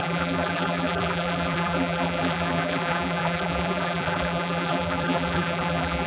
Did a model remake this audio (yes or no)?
yes